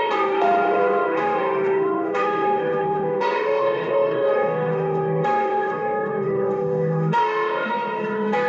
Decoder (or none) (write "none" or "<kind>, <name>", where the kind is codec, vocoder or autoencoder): autoencoder, DAC-VAE